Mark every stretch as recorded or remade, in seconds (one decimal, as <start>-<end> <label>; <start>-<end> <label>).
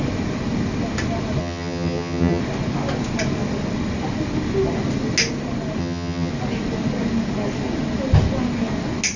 0.0-1.4 recorded; 1.4-2.4 remade; 2.4-5.8 recorded; 5.8-6.3 remade; 6.3-9.2 recorded